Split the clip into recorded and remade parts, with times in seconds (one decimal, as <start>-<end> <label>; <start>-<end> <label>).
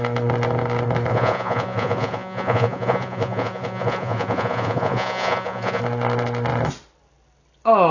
0.0-1.1 recorded; 1.1-5.8 remade; 5.8-7.9 recorded